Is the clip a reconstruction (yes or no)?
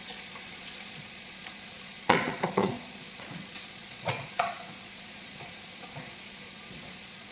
yes